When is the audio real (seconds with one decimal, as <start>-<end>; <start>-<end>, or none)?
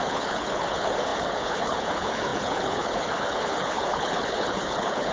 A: none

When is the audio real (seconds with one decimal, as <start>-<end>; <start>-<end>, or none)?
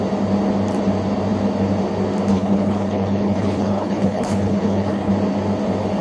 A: 0.0-2.3; 5.1-6.0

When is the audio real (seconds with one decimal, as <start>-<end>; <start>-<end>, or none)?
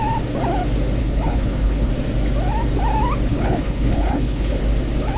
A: 0.0-1.0; 1.9-3.3; 4.6-5.2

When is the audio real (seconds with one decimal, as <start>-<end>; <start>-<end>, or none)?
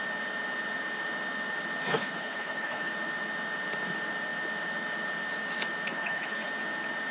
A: 0.0-1.9; 2.9-5.9; 6.5-7.1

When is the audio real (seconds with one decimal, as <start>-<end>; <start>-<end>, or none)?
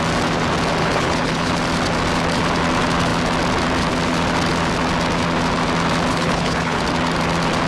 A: 0.0-0.8; 1.5-6.1; 6.8-7.7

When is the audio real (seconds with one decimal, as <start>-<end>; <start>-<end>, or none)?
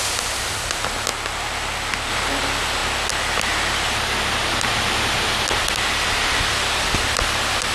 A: 0.0-7.7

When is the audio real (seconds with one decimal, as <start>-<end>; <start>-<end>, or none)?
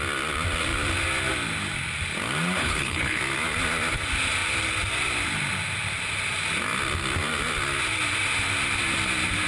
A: 0.0-2.6; 3.2-9.5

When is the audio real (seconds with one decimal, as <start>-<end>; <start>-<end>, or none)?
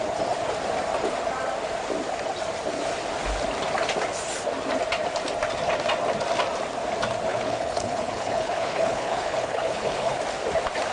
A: 0.0-7.3; 10.2-10.9